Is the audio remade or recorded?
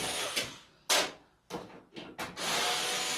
recorded